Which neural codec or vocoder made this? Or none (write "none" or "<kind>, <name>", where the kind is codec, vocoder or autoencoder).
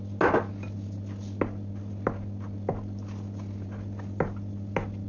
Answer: none